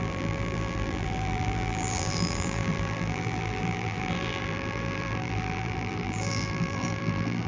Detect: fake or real fake